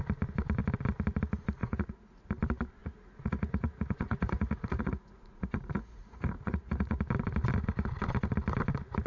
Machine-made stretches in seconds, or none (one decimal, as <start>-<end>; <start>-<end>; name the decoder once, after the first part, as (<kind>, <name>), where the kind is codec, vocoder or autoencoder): 1.6-2.3 (vocoder, Vocos); 2.8-7.0